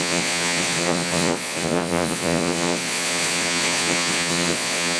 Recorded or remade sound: remade